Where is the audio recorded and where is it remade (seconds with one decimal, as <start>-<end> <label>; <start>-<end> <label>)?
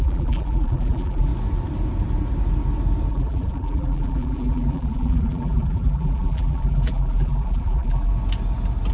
0.0-1.3 remade; 1.3-3.1 recorded; 3.1-8.1 remade; 8.1-8.9 recorded